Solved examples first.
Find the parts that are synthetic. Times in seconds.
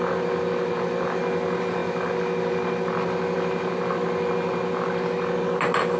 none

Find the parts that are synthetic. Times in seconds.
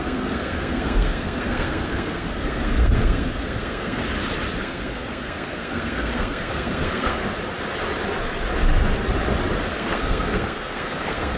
0.0-4.0 (codec, SNAC); 4.6-7.2; 9.7-11.4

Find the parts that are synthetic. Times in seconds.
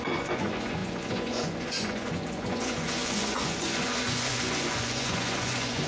0.0-5.9 (vocoder, Vocos)